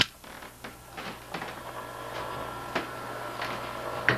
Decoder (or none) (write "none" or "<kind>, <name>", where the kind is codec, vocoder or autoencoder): none